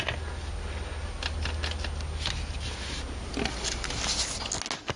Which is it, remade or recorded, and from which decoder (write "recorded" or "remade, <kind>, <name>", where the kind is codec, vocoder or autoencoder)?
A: recorded